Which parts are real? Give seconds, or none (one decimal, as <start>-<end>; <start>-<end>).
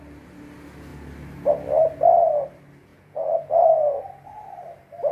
0.0-2.9; 3.5-5.1